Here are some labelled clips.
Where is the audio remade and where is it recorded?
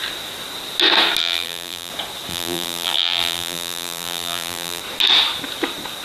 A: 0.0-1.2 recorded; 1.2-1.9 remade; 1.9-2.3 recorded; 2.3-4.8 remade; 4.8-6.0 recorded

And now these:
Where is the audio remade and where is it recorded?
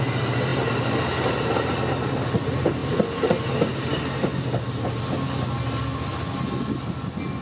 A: 0.0-7.4 recorded